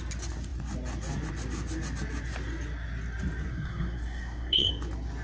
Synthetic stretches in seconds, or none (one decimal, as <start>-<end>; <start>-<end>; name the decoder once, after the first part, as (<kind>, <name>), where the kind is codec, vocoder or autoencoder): 3.5-4.7 (codec, SNAC)